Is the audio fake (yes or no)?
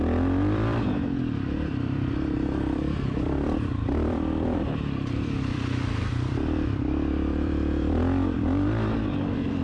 yes